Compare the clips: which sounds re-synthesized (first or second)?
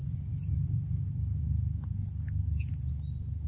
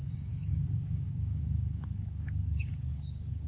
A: second